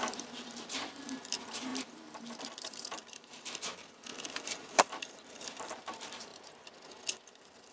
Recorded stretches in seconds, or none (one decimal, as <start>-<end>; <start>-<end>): 6.3-7.7